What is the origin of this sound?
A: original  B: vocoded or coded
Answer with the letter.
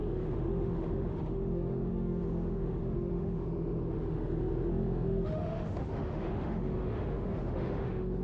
B